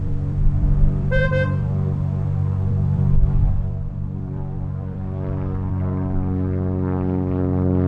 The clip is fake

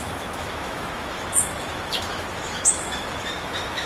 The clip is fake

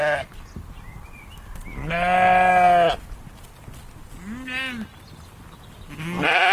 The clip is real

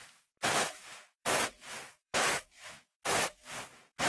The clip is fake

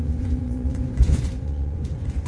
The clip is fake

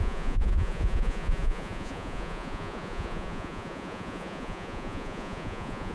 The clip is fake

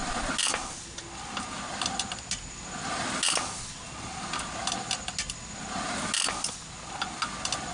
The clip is real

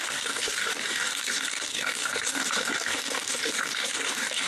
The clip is fake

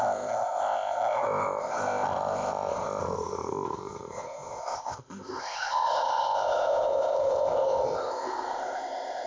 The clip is fake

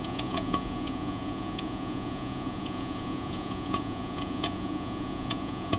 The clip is fake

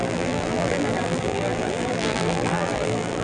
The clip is fake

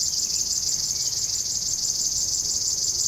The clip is real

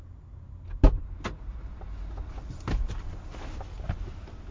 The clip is real